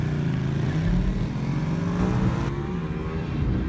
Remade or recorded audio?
recorded